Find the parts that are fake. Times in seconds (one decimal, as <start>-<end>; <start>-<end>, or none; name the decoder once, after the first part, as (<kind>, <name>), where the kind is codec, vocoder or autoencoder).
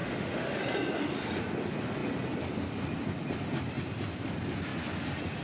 0.0-0.6 (autoencoder, DAC-VAE)